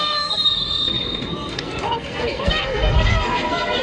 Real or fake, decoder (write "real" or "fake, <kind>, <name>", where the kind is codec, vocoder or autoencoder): fake, codec, SNAC